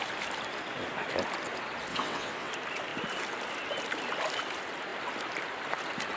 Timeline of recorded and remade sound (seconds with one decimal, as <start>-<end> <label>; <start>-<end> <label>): 0.0-1.9 recorded; 1.9-2.5 remade; 2.5-6.2 recorded